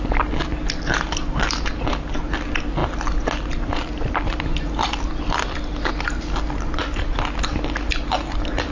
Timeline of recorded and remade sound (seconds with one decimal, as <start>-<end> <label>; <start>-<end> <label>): 0.0-8.7 recorded